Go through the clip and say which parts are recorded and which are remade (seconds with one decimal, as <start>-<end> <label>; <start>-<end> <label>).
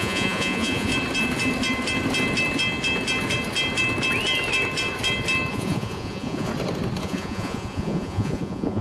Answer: 0.0-0.9 remade; 0.9-5.5 recorded; 5.5-6.5 remade; 6.5-7.0 recorded; 7.0-8.8 remade